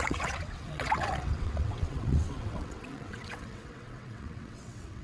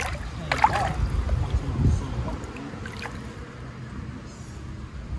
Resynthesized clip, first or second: first